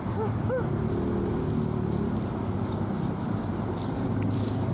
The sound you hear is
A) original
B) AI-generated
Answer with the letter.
A